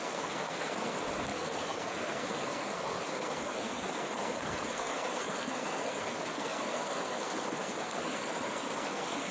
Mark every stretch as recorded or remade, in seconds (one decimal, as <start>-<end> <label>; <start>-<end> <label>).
0.0-9.3 remade